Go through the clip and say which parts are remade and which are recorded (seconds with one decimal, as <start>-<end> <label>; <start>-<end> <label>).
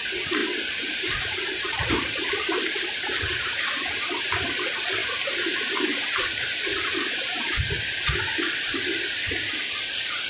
0.0-0.4 recorded; 0.4-4.0 remade; 4.0-6.7 recorded; 6.7-7.4 remade; 7.4-10.3 recorded